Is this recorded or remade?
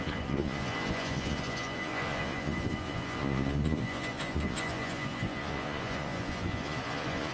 remade